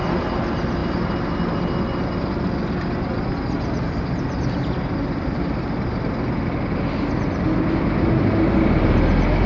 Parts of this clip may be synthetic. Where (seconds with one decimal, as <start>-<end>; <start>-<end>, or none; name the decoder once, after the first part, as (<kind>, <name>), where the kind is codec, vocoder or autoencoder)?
none